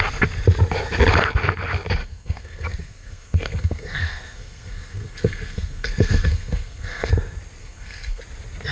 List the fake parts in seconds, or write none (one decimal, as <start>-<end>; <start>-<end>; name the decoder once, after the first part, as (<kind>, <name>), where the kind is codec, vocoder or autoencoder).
2.0-7.1 (codec, SNAC); 7.6-8.2